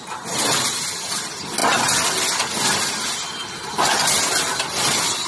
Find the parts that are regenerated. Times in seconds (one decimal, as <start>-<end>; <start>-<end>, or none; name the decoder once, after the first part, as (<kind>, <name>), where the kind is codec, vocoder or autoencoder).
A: none

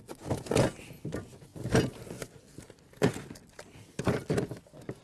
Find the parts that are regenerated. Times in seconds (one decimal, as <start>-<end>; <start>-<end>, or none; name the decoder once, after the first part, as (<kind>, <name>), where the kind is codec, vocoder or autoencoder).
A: none

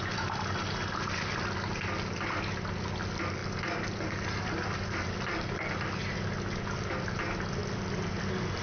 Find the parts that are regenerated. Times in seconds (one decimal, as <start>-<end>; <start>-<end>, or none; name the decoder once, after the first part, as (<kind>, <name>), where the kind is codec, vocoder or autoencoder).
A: none

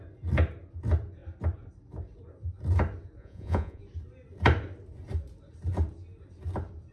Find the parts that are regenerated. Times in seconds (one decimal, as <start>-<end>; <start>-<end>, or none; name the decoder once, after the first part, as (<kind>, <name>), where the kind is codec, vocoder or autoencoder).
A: 3.2-3.8 (vocoder, Vocos)

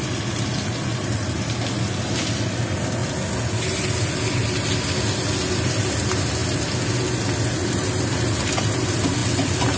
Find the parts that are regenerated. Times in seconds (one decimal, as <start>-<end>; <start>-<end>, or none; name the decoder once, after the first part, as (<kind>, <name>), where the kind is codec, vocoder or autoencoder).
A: none

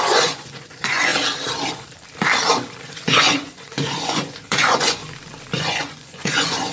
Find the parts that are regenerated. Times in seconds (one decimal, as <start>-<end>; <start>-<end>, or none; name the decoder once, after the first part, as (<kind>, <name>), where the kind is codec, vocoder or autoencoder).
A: 0.0-1.1 (vocoder, Vocos); 2.8-5.0; 5.6-6.7

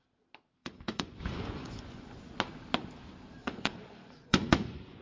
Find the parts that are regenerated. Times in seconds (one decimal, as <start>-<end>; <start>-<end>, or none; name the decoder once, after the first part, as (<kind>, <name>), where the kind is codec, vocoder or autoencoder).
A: 0.6-2.2 (vocoder, Vocos); 3.4-5.0

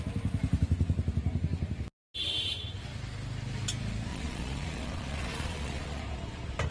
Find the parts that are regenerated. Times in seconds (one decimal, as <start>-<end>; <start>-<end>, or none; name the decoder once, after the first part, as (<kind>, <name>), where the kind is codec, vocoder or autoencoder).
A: 4.1-6.0 (vocoder, Vocos)